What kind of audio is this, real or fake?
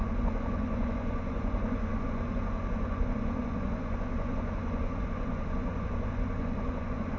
fake